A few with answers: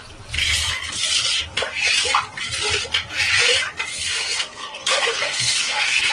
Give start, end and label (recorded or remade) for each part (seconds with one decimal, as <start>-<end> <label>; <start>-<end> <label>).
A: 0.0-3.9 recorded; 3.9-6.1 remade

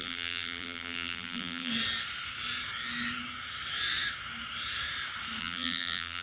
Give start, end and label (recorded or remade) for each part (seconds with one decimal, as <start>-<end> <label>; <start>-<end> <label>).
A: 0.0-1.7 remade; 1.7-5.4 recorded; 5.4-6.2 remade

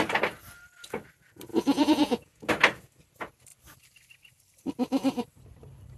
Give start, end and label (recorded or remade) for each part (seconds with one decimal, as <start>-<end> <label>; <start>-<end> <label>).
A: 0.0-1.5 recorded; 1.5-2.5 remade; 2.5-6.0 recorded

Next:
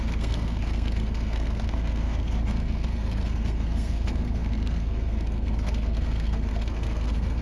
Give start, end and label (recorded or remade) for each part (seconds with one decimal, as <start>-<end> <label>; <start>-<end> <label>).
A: 0.0-7.4 remade

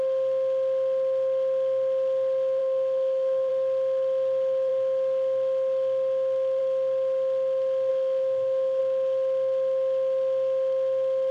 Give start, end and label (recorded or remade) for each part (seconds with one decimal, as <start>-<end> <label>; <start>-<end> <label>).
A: 0.0-2.6 recorded; 2.6-3.5 remade; 3.5-7.9 recorded; 7.9-8.8 remade; 8.8-11.3 recorded

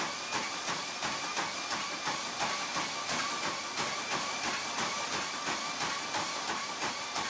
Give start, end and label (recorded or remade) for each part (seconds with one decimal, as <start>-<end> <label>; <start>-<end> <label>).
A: 0.0-7.3 recorded

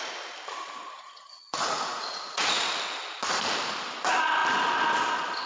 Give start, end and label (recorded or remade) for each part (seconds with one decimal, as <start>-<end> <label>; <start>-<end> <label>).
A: 0.0-0.8 recorded; 0.8-2.6 remade; 2.6-5.5 recorded